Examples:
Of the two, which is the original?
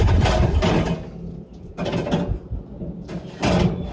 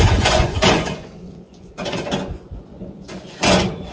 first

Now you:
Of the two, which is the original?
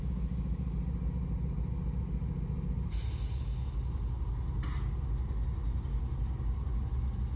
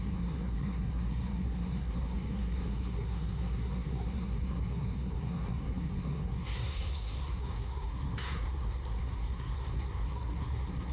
first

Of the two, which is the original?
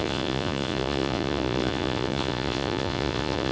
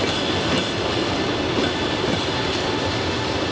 second